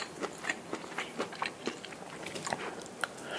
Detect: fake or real real